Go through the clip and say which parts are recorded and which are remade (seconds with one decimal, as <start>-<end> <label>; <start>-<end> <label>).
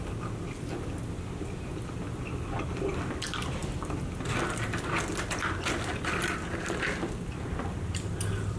0.0-8.6 recorded